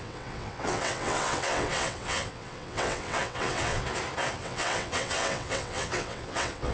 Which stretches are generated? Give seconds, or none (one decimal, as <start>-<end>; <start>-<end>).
0.0-3.8; 4.4-6.7